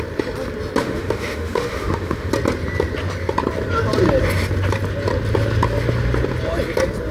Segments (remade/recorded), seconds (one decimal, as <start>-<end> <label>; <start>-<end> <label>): 0.0-0.8 recorded; 0.8-2.3 remade; 2.3-7.1 recorded